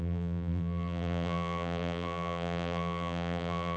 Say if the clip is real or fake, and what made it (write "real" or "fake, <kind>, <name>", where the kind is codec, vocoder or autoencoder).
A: fake, vocoder, BigVGAN v2